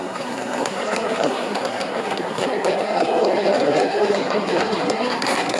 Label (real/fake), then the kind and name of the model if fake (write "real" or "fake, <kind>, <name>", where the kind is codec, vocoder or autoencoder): fake, codec, SNAC